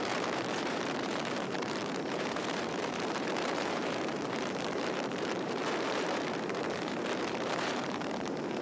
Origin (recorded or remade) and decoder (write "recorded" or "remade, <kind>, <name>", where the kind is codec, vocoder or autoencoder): remade, vocoder, BigVGAN v2